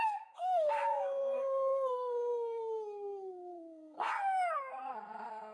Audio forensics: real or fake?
fake